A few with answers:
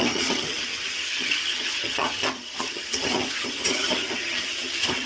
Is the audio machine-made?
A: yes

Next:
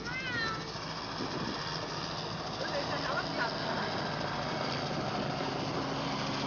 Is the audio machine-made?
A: no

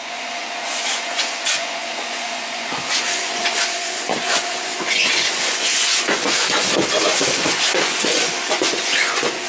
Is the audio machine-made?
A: yes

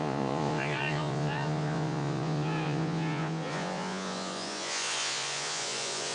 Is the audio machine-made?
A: yes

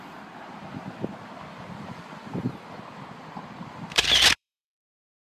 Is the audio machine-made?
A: yes